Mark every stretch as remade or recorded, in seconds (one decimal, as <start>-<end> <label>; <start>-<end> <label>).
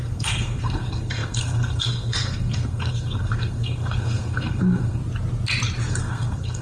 0.0-5.0 remade; 5.0-5.9 recorded; 5.9-6.6 remade